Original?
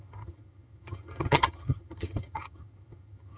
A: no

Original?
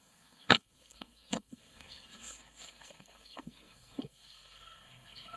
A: no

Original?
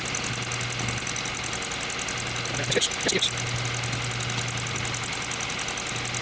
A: yes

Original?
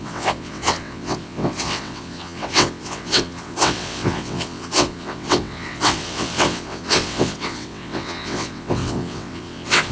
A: no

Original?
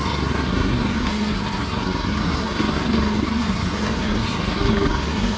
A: no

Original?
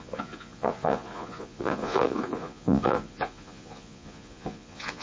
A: no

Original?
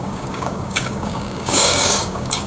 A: no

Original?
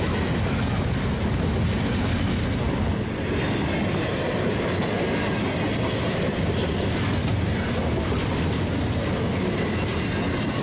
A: yes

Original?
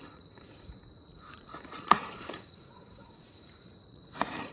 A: no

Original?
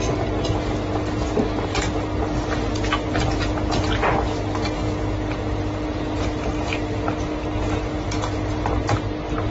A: yes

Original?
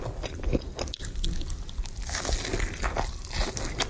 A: yes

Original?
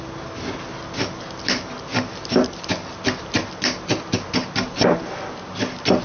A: yes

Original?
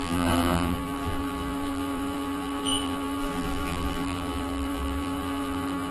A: no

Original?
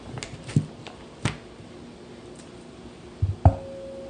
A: yes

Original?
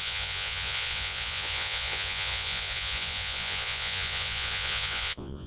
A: no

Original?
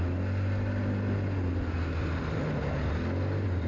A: yes